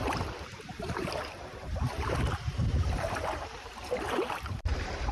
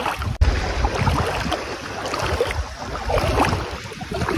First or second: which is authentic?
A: second